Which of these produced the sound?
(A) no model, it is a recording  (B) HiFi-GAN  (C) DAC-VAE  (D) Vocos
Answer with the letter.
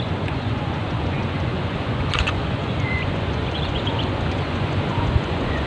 D